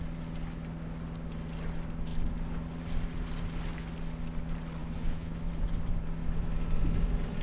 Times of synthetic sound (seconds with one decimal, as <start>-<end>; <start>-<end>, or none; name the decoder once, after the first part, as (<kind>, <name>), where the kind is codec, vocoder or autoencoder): 4.8-5.5 (autoencoder, DAC-VAE)